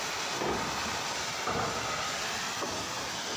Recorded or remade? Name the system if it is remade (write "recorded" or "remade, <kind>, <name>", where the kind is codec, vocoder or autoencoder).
recorded